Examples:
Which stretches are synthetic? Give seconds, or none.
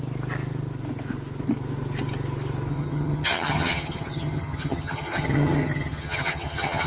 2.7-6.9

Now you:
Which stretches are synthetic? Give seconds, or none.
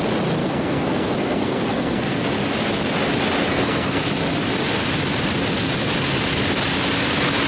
0.4-2.2; 3.4-4.0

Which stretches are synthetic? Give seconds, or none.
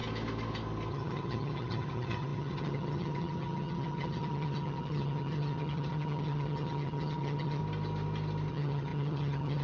0.9-7.6; 8.5-9.6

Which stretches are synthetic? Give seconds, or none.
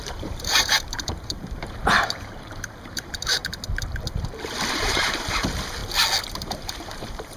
0.0-3.4; 4.7-5.8; 6.3-7.4